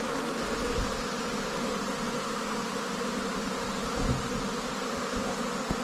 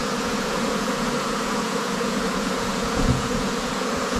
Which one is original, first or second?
first